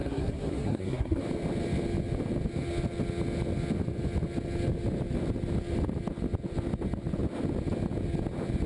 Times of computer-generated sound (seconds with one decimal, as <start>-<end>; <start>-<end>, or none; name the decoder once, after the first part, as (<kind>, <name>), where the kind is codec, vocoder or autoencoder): 0.0-1.2 (codec, SNAC)